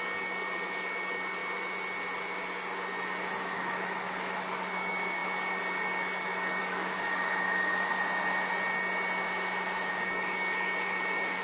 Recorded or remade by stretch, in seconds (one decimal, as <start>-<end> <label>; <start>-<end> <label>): 0.0-1.4 remade; 1.4-3.4 recorded; 3.4-7.9 remade; 7.9-9.9 recorded; 9.9-11.4 remade